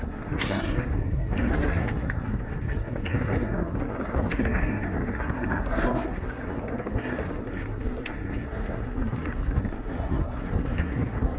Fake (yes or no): yes